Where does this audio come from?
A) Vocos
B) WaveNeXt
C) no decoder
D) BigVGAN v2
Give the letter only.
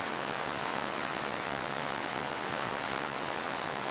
B